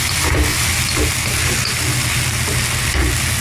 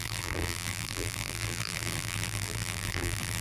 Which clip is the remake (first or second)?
second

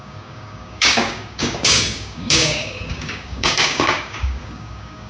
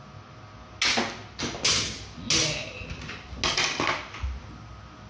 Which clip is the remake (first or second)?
first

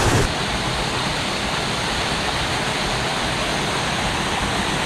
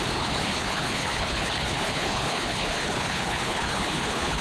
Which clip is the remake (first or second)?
second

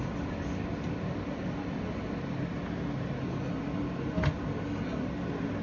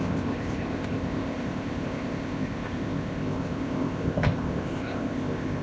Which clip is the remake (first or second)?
second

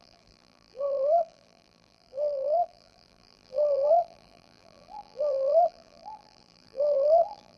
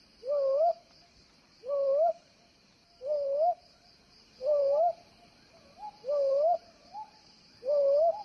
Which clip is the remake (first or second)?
first